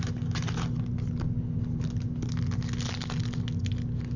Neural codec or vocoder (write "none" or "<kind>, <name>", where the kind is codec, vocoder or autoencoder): none